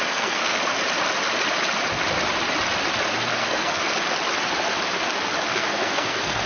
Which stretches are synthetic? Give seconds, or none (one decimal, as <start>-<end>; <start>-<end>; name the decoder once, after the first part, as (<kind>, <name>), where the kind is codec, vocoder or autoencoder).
0.0-0.6 (codec, SNAC); 3.4-4.0; 5.5-6.5